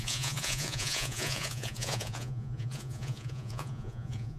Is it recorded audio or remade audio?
remade